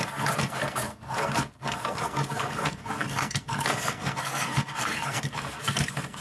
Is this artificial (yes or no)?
yes